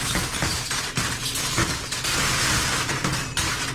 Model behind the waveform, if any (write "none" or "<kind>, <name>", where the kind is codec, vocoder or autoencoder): none